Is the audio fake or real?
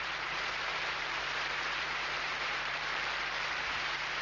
fake